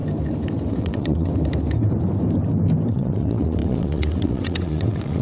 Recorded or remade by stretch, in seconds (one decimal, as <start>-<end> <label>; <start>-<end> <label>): 0.0-0.8 recorded; 0.8-1.3 remade; 1.3-2.9 recorded; 2.9-5.2 remade